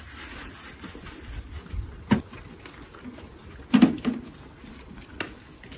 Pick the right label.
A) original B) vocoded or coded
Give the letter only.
A